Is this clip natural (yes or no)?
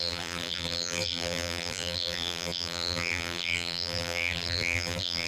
no